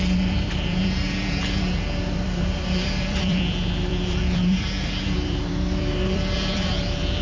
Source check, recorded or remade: remade